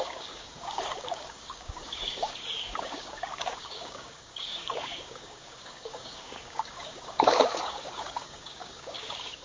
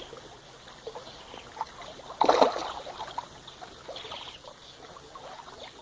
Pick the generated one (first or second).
first